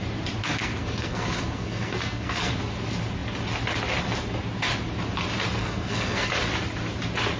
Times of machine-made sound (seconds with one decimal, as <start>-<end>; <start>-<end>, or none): 0.4-2.5; 5.6-6.3